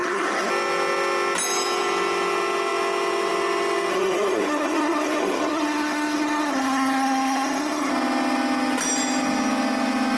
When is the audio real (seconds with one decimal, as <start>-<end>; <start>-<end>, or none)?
0.5-3.9; 7.9-10.2